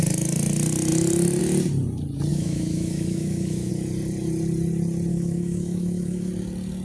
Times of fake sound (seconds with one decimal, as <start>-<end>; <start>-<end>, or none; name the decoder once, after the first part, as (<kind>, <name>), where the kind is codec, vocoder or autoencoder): 2.3-3.7 (autoencoder, DAC-VAE); 5.1-6.3